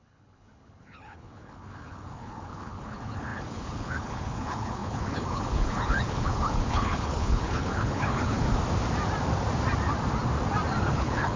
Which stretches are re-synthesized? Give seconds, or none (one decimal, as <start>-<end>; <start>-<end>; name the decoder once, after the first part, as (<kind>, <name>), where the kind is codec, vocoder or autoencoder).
0.0-8.5 (codec, HILCodec); 10.8-11.4